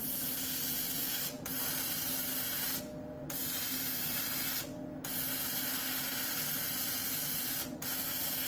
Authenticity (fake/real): real